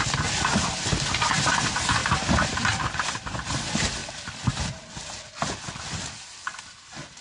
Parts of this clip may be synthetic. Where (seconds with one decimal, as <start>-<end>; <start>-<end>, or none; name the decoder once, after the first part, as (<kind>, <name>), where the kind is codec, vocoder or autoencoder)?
2.0-3.5 (vocoder, BigVGAN v2)